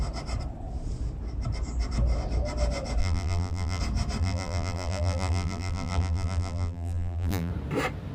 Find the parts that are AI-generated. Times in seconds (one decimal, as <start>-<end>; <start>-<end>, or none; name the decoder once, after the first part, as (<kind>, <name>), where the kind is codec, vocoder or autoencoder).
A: 3.0-3.8 (vocoder, BigVGAN v2); 4.2-7.5